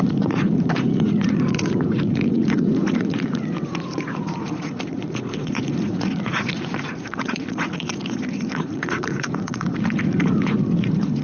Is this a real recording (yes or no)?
no